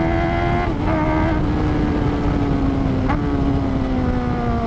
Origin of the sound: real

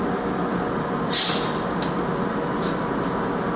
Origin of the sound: real